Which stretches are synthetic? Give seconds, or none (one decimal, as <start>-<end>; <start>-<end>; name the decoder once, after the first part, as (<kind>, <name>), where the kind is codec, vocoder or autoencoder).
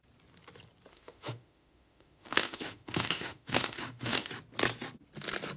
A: 0.9-4.3 (autoencoder, DAC-VAE)